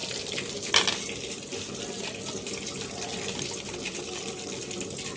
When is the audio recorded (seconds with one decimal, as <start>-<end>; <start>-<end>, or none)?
0.0-5.2